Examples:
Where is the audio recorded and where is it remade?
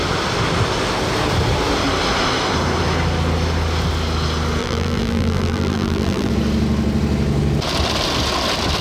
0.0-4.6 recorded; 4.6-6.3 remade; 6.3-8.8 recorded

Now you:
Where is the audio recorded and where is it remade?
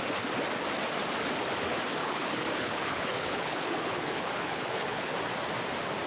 0.0-2.0 recorded; 2.0-5.1 remade; 5.1-6.1 recorded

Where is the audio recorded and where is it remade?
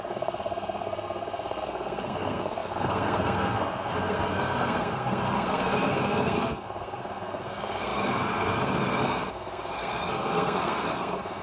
0.0-11.4 remade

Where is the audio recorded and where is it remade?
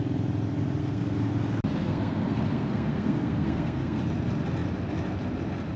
0.0-0.8 recorded; 0.8-1.3 remade; 1.3-1.8 recorded; 1.8-4.0 remade; 4.0-5.8 recorded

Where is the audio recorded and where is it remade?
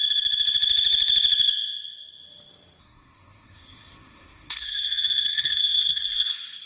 0.0-2.8 recorded; 2.8-6.7 remade